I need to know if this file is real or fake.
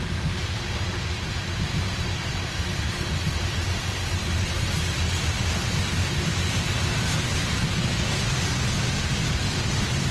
fake